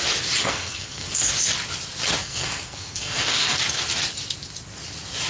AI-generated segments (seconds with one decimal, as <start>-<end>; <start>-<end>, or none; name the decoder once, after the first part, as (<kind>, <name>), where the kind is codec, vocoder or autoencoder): 0.4-1.1 (codec, SNAC); 2.2-3.6